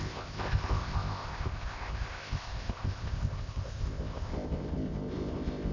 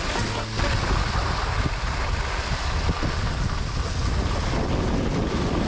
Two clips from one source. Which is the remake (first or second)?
first